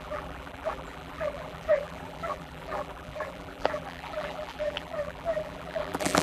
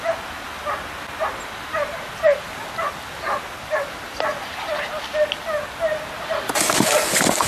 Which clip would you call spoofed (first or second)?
first